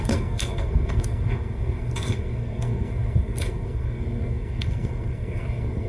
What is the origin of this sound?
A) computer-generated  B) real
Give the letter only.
A